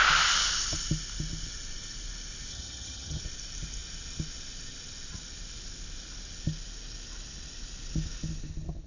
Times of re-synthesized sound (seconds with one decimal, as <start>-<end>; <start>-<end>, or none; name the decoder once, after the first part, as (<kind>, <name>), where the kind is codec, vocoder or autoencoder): 2.5-3.2 (vocoder, HiFi-GAN)